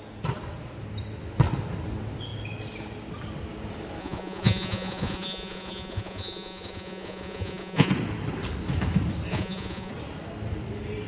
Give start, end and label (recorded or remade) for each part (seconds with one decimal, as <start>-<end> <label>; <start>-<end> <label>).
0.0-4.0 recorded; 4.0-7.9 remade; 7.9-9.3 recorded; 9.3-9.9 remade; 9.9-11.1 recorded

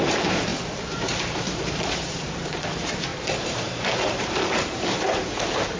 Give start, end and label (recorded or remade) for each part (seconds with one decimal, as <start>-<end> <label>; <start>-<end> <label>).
0.0-5.8 remade

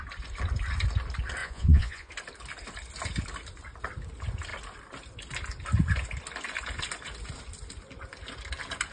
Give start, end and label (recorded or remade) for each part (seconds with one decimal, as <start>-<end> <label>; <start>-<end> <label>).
0.0-1.4 recorded; 1.4-2.1 remade; 2.1-8.9 recorded

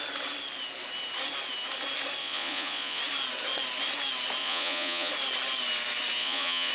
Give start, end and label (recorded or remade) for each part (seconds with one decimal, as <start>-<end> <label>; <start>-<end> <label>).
0.0-2.2 recorded; 2.2-3.0 remade; 3.0-4.4 recorded; 4.4-5.1 remade; 5.1-6.2 recorded; 6.2-6.7 remade

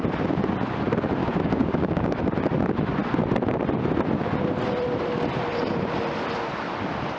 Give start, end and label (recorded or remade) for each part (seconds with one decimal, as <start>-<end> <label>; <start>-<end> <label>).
0.0-1.2 recorded; 1.2-2.2 remade; 2.2-7.2 recorded

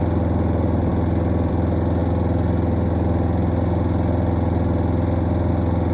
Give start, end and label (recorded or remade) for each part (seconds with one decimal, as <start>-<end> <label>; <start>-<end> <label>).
0.0-5.9 recorded